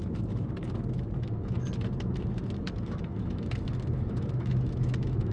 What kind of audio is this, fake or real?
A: fake